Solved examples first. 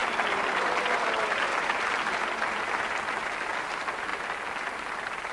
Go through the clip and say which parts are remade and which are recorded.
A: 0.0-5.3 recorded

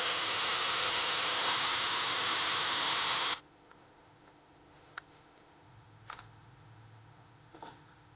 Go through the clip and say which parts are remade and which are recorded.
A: 0.0-8.2 remade

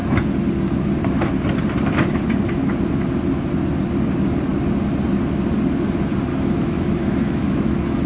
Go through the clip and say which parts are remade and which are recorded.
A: 0.0-6.3 recorded; 6.3-8.1 remade

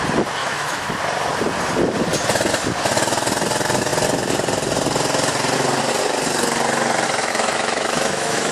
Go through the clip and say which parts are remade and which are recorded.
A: 0.0-0.4 recorded; 0.4-0.9 remade; 0.9-7.2 recorded; 7.2-8.5 remade